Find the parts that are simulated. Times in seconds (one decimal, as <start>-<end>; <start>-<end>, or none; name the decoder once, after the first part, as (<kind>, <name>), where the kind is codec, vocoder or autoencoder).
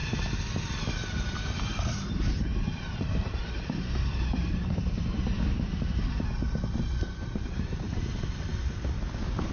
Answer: 1.9-6.3 (vocoder, BigVGAN v2); 6.9-8.5